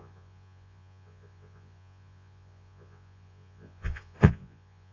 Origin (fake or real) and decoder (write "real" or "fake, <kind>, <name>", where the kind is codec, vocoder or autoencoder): fake, vocoder, Vocos